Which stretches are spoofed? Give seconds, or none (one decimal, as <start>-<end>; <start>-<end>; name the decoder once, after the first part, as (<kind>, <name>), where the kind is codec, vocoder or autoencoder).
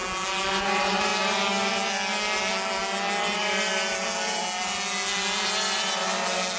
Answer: none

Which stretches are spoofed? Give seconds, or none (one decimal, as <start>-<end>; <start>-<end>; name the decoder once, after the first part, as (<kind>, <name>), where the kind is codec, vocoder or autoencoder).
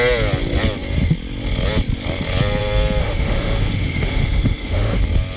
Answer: 3.0-5.0 (autoencoder, DAC-VAE)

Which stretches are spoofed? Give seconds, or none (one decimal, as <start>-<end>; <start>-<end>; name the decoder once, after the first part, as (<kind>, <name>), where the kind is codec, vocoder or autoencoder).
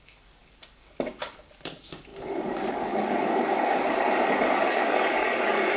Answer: 0.0-5.8 (codec, DAC)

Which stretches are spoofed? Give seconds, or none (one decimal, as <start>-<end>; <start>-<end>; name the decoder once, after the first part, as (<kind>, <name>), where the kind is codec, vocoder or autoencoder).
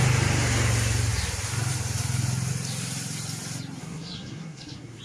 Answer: 3.8-5.0 (codec, SNAC)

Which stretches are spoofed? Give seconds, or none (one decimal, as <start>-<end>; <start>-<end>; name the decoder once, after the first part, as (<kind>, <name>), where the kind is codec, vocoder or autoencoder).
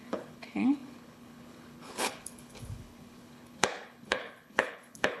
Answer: 0.0-5.2 (codec, HILCodec)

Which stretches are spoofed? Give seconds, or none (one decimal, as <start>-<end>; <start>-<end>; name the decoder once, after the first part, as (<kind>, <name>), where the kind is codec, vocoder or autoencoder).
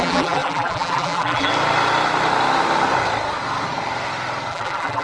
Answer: 0.0-1.5 (vocoder, BigVGAN v2); 4.5-5.0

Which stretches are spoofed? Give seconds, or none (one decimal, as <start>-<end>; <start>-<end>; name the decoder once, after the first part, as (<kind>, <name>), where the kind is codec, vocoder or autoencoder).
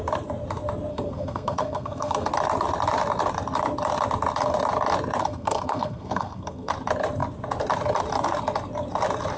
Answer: 0.9-2.3 (codec, SNAC); 5.2-6.7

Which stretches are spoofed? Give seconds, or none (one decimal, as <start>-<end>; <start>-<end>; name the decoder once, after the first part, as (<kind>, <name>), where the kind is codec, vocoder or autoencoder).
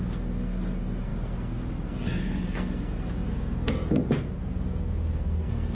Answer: 0.0-5.7 (codec, SNAC)